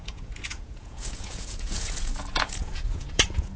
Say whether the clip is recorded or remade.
remade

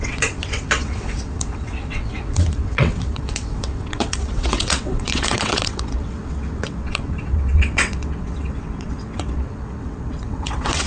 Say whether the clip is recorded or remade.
remade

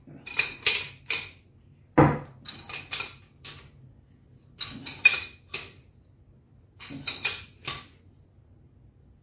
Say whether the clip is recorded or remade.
recorded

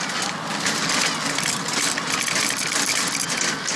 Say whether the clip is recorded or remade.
recorded